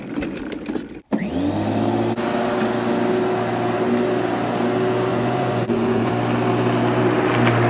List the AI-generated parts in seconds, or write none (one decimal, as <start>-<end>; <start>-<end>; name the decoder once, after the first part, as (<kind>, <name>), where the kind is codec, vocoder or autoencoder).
5.1-6.1 (vocoder, Vocos)